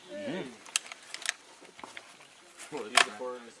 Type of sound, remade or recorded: recorded